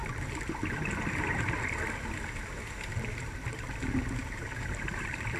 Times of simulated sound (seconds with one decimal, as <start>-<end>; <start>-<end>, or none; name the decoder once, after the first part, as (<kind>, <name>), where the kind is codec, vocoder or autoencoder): none